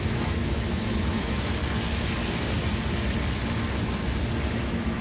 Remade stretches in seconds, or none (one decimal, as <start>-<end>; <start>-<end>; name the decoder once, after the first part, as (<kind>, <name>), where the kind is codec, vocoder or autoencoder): 0.0-1.6 (autoencoder, DAC-VAE); 4.6-5.0